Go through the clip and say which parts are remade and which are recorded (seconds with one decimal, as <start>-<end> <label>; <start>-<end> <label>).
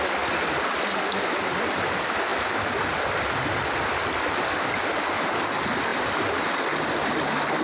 0.0-7.6 recorded